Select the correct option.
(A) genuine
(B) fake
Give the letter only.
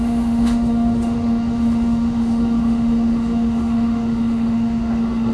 B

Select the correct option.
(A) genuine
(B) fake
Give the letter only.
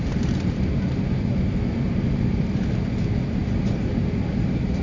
A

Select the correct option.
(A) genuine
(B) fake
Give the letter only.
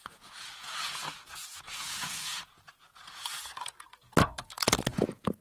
B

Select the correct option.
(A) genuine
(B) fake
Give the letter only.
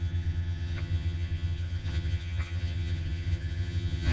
B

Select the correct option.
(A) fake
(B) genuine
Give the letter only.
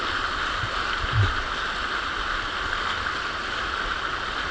B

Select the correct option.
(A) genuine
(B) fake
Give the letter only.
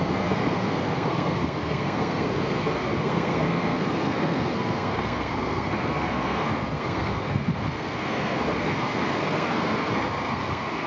B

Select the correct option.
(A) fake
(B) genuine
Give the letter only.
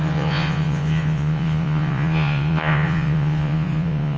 A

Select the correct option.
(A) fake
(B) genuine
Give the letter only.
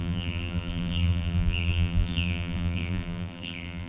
A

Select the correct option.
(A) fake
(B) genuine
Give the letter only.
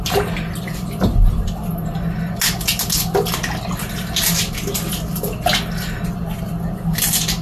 B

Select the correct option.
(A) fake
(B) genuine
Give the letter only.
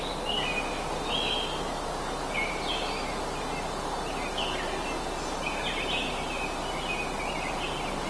B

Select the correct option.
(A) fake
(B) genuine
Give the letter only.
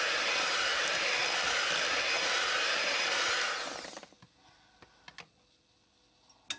B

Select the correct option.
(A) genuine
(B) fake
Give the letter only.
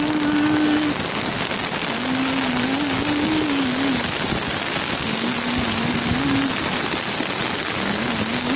A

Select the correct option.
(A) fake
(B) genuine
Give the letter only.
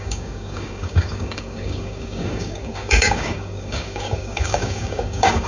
A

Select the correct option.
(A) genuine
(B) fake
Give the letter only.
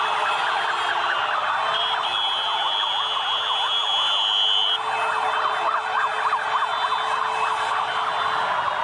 A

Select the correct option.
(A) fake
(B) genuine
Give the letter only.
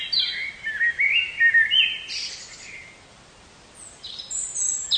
B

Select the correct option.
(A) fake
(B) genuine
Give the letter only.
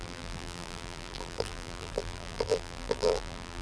A